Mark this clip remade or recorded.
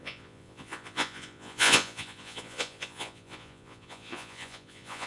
remade